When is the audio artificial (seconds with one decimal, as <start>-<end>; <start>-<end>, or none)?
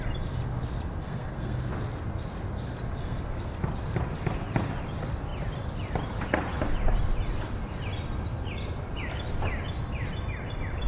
1.0-1.7; 3.0-3.5